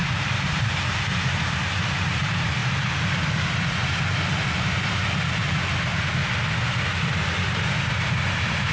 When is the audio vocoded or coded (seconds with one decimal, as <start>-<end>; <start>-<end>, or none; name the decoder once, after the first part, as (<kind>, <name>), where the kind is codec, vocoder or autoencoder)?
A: 0.0-5.9 (vocoder, BigVGAN v2)